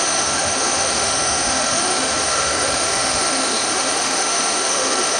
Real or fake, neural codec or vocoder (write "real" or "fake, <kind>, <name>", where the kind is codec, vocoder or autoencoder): fake, autoencoder, DAC-VAE